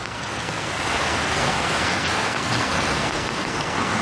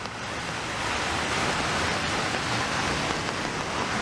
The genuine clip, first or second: second